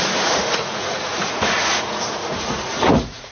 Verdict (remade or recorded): remade